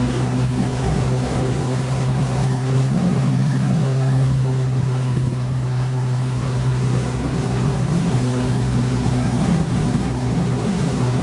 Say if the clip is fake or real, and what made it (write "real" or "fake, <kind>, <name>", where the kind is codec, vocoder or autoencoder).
fake, codec, SNAC